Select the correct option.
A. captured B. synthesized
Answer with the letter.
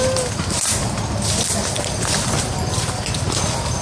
A